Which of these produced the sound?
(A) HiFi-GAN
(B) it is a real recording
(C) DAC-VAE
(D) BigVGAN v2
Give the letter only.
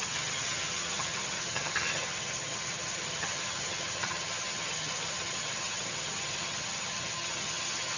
A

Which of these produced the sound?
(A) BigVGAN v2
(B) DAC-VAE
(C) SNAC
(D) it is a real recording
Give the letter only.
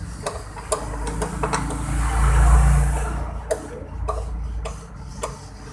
D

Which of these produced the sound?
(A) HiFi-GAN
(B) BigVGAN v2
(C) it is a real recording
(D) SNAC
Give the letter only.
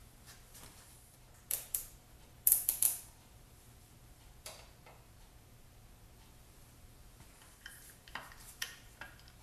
B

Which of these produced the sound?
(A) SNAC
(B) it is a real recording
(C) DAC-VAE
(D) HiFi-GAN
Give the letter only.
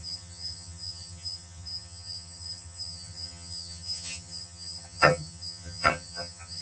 D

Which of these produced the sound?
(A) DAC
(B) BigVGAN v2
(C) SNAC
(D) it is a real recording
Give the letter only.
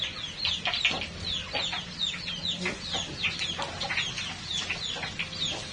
D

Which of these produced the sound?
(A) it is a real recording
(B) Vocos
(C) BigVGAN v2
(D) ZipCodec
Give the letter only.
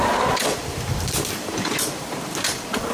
C